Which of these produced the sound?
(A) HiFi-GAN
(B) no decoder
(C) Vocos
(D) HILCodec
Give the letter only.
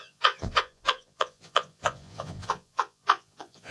C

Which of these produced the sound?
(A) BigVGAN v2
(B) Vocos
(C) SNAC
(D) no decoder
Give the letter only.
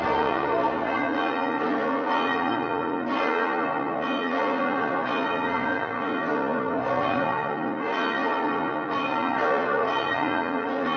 B